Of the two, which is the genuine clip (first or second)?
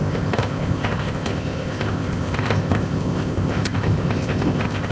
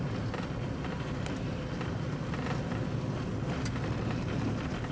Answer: second